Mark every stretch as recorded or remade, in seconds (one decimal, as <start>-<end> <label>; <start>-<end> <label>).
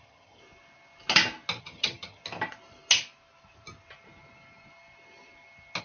0.0-0.4 remade; 0.4-1.6 recorded; 1.6-2.2 remade; 2.2-5.8 recorded